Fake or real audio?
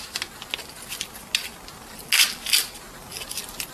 real